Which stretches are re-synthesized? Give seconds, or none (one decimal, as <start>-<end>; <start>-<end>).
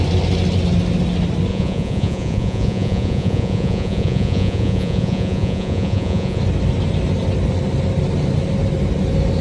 1.5-6.4